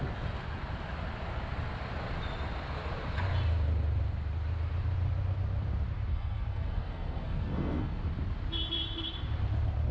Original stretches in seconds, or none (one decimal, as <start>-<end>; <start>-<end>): 0.0-6.1; 8.0-9.9